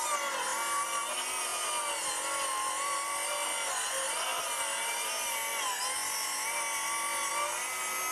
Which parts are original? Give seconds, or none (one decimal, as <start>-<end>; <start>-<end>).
0.0-8.1